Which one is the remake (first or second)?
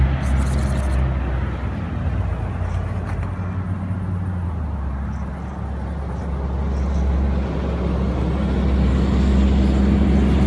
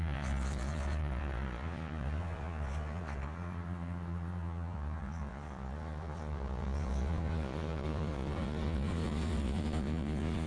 second